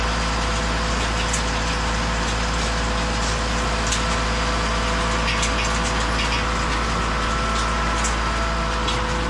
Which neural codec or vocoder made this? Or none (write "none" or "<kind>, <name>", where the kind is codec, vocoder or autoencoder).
none